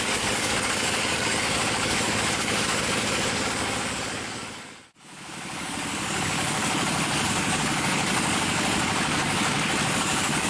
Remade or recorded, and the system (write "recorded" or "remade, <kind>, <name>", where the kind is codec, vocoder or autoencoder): remade, codec, DAC